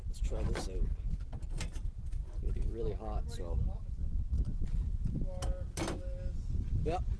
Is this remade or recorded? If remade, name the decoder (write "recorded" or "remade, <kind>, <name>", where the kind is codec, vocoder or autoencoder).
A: recorded